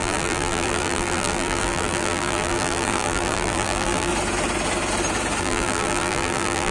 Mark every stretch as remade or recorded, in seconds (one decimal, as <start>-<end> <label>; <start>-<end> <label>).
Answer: 0.0-4.1 remade; 4.1-5.4 recorded; 5.4-6.7 remade